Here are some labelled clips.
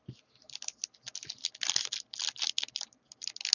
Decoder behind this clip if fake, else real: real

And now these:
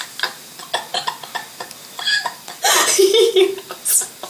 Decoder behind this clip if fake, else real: real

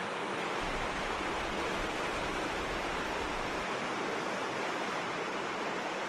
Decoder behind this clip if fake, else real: fake, vocoder, BigVGAN v2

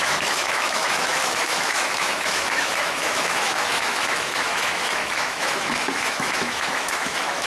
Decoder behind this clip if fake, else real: fake, autoencoder, DAC-VAE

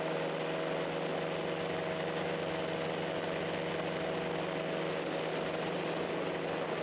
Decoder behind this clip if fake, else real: real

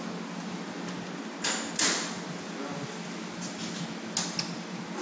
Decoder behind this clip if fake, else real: real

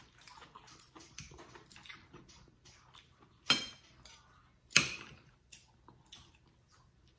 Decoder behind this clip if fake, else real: fake, vocoder, BigVGAN v2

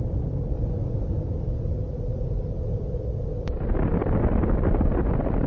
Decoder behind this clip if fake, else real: real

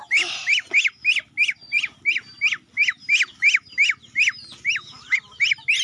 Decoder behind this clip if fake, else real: real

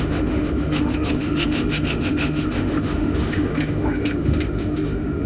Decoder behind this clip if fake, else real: fake, autoencoder, DAC-VAE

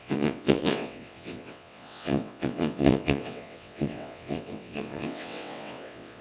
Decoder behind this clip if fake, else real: fake, vocoder, WaveNeXt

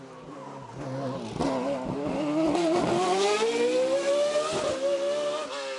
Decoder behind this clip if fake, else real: real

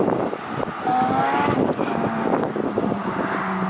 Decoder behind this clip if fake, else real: real